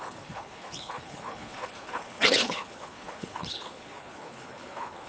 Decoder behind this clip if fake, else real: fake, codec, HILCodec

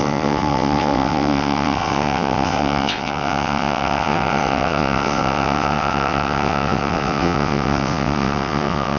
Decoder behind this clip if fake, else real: fake, vocoder, WaveNeXt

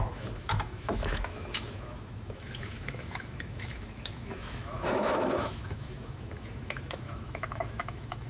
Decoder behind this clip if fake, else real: fake, autoencoder, DAC-VAE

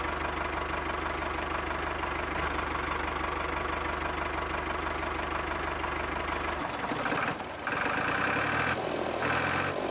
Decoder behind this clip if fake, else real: real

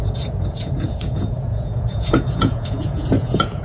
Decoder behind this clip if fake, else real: fake, vocoder, Vocos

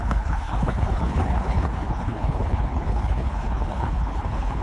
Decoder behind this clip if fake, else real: fake, codec, HILCodec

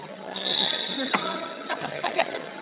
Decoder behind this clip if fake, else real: fake, vocoder, HiFi-GAN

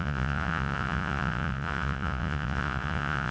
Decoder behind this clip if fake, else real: fake, vocoder, Vocos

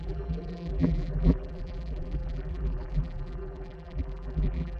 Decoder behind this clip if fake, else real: fake, vocoder, BigVGAN v2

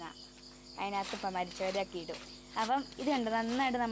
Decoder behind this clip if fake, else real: real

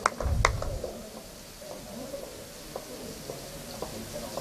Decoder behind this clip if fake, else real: real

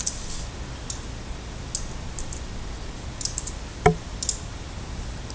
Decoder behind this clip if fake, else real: real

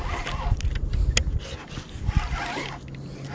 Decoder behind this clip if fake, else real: real